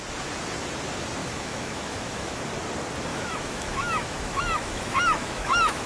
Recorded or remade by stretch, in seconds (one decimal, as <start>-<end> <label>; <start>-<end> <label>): 0.0-1.2 recorded; 1.2-2.4 remade; 2.4-3.1 recorded; 3.1-5.9 remade